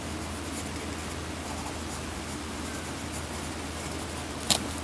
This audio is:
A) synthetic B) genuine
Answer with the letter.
B